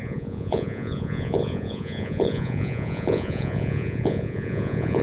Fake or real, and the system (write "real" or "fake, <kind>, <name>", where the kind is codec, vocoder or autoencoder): fake, vocoder, Vocos